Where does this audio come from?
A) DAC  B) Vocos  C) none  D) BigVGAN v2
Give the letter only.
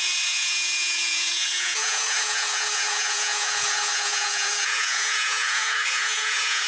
B